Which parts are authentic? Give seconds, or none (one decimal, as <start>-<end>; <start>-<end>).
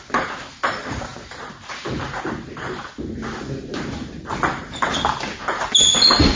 0.0-6.4